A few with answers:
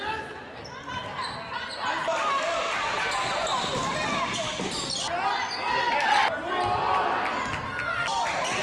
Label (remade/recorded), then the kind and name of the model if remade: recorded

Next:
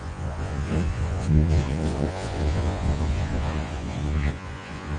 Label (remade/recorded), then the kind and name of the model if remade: remade, vocoder, Vocos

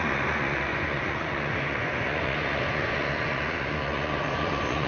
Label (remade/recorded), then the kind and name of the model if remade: remade, vocoder, Vocos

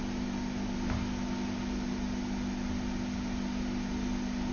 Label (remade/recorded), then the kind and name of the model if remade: recorded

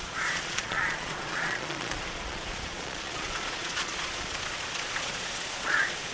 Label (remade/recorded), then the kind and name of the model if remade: remade, vocoder, Vocos